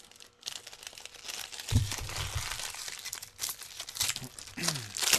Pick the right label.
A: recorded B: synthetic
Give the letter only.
A